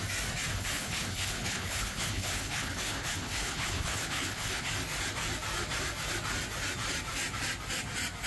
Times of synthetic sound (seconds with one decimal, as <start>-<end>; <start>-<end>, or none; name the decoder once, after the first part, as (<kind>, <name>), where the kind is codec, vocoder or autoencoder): 0.5-4.7 (codec, HILCodec)